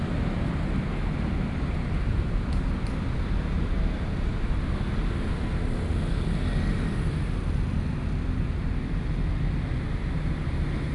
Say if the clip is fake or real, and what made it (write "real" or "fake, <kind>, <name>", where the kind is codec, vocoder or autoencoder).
real